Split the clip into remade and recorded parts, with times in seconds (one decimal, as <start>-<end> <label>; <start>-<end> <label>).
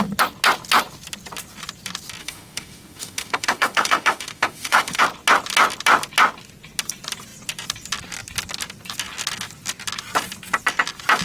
0.0-2.2 recorded; 2.2-5.0 remade; 5.0-11.2 recorded